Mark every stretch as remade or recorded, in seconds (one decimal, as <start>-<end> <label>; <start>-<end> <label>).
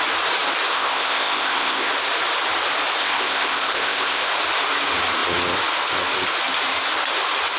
0.0-0.7 recorded; 0.7-1.9 remade; 1.9-3.0 recorded; 3.0-4.3 remade; 4.3-7.6 recorded